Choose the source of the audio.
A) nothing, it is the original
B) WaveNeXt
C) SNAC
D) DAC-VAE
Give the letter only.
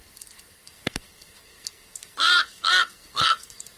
C